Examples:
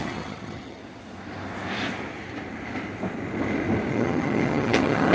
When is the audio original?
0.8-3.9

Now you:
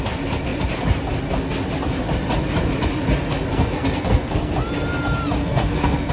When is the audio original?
0.0-3.5; 4.5-5.4

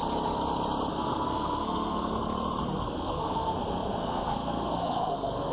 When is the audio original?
0.0-0.9; 2.1-2.6

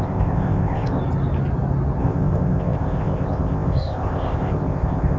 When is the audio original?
1.0-2.0

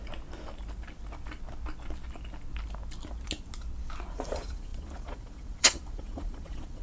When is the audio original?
0.0-4.1

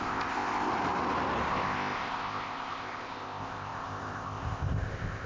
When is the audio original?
0.7-1.5